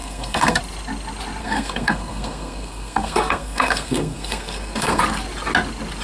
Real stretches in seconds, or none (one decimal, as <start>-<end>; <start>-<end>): 0.6-1.4; 5.0-6.0